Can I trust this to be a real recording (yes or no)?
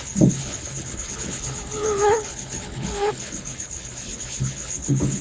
no